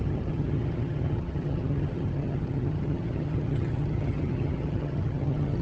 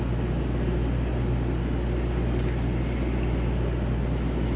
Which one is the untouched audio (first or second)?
second